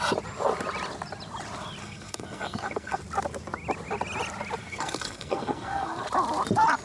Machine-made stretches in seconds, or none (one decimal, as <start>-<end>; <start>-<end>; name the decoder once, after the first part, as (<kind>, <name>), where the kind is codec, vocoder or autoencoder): 1.8-3.0 (codec, SNAC); 4.6-6.0